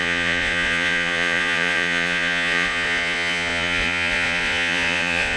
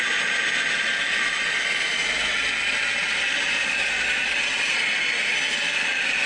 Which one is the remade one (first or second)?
first